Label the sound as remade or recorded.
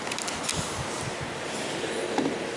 recorded